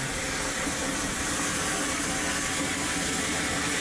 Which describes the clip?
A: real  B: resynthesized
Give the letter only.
A